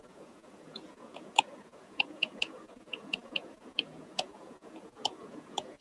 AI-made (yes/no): yes